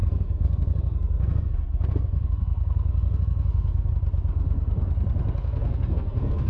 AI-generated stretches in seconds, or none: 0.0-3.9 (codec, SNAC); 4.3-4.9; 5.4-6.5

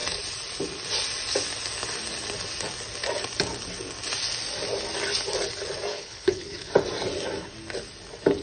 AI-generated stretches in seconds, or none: 5.9-6.7 (codec, HILCodec)